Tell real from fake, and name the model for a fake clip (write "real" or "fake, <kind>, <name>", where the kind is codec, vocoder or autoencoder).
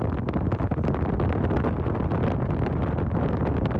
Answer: real